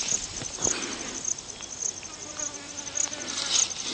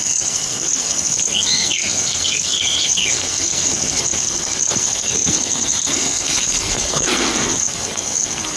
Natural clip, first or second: first